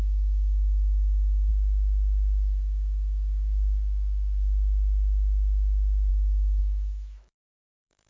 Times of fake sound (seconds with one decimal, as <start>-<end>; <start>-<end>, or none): 0.0-1.5; 6.1-8.1